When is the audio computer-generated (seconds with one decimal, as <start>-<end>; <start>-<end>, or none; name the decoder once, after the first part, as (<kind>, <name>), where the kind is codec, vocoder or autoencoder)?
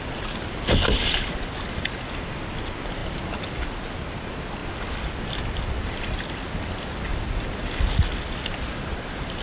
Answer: none